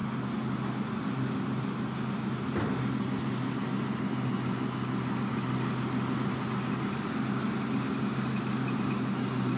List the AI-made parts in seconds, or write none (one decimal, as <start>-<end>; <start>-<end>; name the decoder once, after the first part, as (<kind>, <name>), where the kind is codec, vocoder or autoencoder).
none